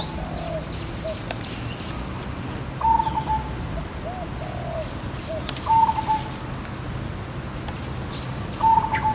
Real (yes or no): yes